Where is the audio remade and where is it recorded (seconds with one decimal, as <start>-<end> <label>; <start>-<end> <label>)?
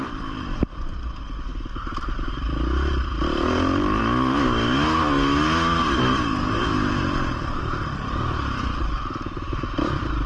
0.0-1.5 remade; 1.5-2.2 recorded; 2.2-4.0 remade; 4.0-7.6 recorded; 7.6-10.3 remade